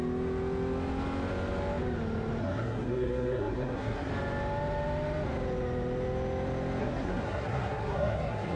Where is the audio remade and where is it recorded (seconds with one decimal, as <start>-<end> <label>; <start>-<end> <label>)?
0.0-2.4 recorded; 2.4-4.1 remade; 4.1-6.8 recorded; 6.8-8.6 remade